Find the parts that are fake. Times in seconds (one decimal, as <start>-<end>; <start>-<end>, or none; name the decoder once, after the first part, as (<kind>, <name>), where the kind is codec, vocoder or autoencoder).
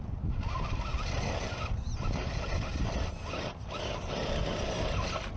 none